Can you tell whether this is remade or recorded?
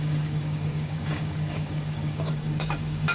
remade